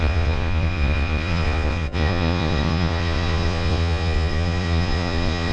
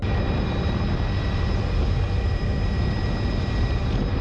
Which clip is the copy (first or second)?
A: first